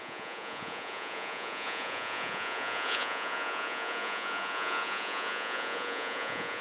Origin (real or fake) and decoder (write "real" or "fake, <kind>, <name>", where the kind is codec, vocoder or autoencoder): fake, vocoder, Vocos